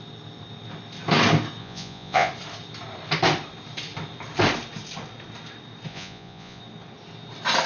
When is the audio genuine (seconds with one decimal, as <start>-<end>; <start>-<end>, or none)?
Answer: 0.0-1.6; 2.3-5.9; 6.6-7.7